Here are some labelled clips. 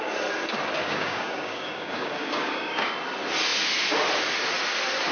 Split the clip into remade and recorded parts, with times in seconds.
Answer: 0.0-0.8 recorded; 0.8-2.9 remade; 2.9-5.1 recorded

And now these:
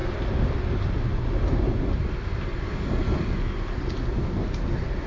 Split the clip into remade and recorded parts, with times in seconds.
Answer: 0.0-0.5 remade; 0.5-5.1 recorded

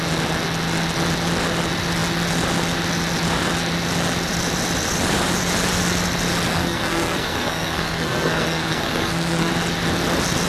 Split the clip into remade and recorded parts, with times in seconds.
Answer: 0.0-6.5 recorded; 6.5-9.5 remade; 9.5-10.5 recorded

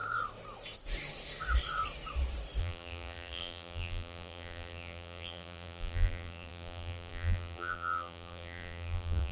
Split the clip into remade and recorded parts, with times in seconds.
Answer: 0.0-2.6 recorded; 2.6-9.3 remade

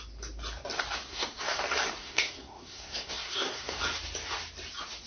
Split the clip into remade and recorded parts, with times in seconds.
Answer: 0.0-1.1 recorded; 1.1-1.6 remade; 1.6-2.0 recorded; 2.0-3.8 remade; 3.8-5.1 recorded

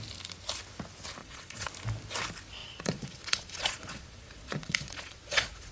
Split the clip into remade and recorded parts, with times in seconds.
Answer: 0.0-1.2 recorded; 1.2-1.7 remade; 1.7-2.6 recorded; 2.6-5.7 remade

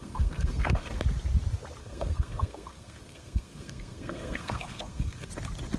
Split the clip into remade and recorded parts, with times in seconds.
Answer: 0.0-1.0 remade; 1.0-1.8 recorded; 1.8-5.3 remade; 5.3-5.8 recorded

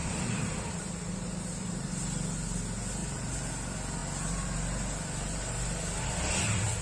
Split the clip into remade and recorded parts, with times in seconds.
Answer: 0.0-1.9 remade; 1.9-3.0 recorded; 3.0-3.5 remade; 3.5-6.8 recorded